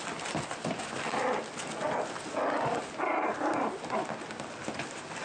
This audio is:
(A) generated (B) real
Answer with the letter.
B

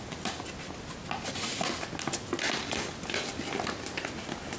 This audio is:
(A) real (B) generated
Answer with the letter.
A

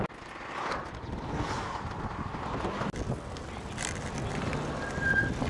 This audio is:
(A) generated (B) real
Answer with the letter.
B